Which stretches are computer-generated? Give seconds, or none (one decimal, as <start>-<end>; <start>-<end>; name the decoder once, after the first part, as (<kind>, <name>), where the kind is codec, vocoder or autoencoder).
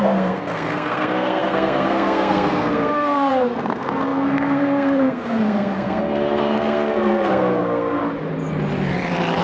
0.0-8.0 (codec, SNAC)